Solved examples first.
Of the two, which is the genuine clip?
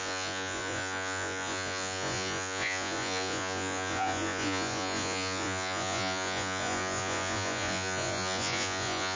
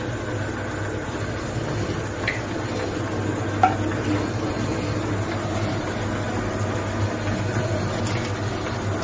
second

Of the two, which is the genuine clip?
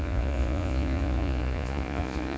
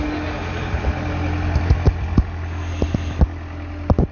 second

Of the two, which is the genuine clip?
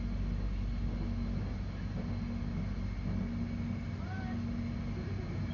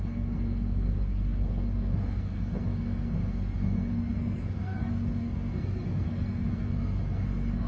first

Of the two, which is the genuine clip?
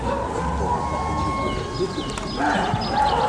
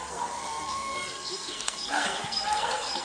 first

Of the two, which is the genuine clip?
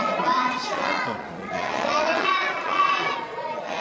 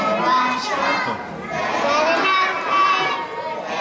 second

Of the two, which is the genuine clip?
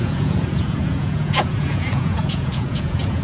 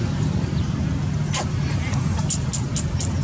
second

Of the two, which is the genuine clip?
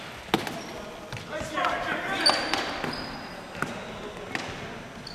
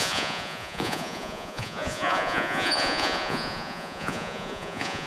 first